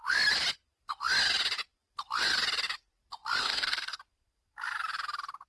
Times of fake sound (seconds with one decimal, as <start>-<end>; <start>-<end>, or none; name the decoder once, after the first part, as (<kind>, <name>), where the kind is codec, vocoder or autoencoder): 3.4-4.0 (codec, SNAC)